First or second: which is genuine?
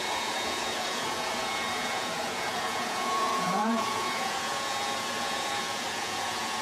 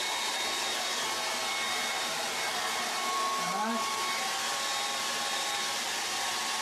second